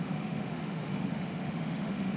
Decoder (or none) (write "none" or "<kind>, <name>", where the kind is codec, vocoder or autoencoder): autoencoder, DAC-VAE